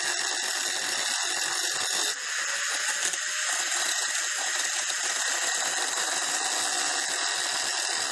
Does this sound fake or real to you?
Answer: real